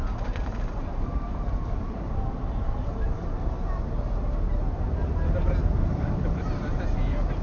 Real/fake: fake